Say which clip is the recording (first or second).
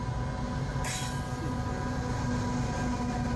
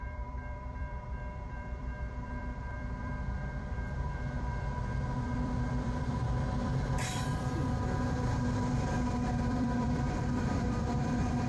first